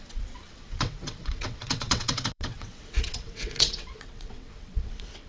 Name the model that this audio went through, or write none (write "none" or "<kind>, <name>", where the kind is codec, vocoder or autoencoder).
vocoder, WaveNeXt